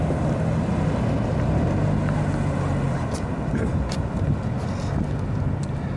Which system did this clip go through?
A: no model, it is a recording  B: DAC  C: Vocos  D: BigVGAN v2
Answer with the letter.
A